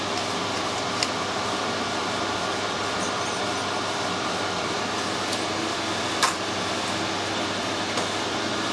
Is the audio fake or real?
fake